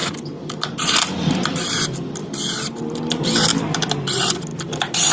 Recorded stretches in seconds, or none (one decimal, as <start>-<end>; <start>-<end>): 3.5-4.6